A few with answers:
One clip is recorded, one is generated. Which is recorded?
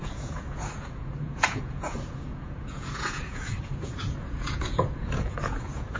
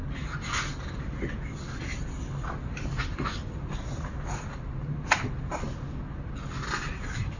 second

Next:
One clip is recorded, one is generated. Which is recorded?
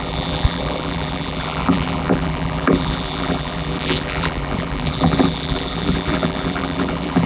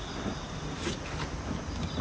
second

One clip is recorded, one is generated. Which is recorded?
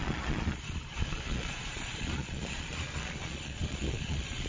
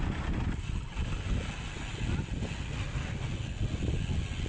second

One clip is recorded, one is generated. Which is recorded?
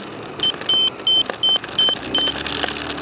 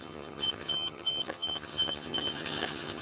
first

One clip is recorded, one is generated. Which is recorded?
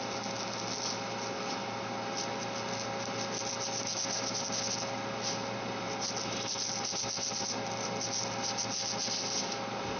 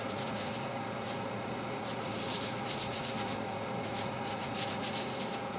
first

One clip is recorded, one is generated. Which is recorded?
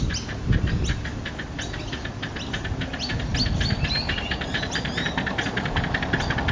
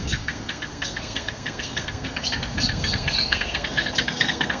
first